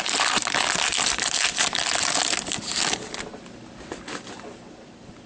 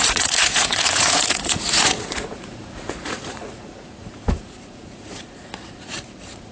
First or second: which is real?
first